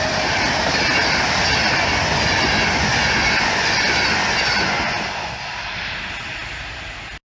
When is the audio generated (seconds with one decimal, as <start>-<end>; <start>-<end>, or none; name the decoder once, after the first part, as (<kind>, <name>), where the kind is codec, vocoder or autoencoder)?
1.7-5.5 (vocoder, Vocos)